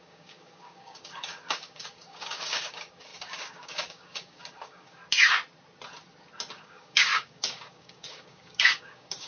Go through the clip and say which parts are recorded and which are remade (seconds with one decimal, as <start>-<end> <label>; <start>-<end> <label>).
0.0-5.0 remade; 5.0-6.5 recorded; 6.5-9.3 remade